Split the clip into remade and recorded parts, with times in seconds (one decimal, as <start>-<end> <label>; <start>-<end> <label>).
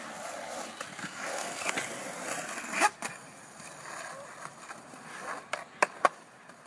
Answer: 0.0-1.0 recorded; 1.0-1.7 remade; 1.7-6.7 recorded